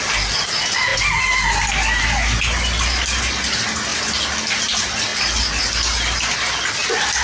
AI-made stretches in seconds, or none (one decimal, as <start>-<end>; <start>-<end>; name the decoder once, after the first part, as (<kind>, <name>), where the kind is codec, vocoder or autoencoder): none